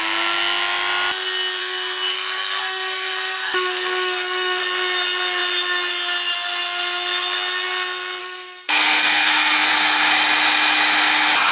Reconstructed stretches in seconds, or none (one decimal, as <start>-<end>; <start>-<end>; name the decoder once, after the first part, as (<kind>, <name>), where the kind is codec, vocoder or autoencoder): 1.6-4.6 (codec, SNAC); 8.2-9.7